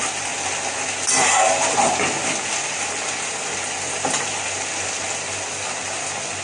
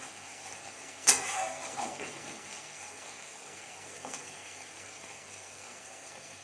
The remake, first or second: second